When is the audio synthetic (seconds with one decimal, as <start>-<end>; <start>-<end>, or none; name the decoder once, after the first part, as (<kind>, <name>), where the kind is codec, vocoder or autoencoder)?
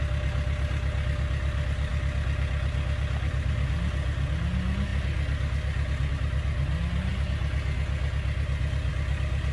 none